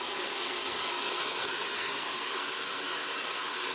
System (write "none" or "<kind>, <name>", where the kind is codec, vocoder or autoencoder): codec, SNAC